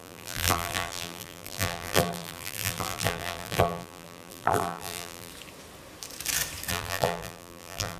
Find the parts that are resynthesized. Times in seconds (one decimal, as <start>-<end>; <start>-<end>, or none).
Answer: 0.0-5.3; 6.7-8.0